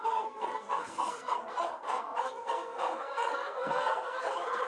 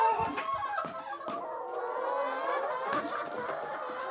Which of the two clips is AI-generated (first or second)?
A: first